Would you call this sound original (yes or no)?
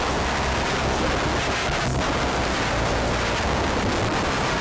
yes